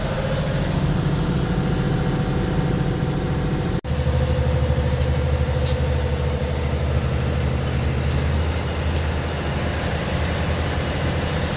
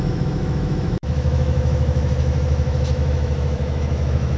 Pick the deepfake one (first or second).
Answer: second